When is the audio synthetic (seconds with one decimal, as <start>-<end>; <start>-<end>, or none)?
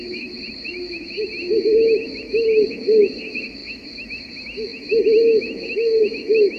0.0-6.6